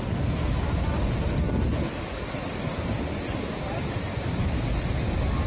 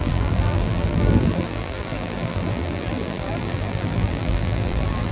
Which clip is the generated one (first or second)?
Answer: second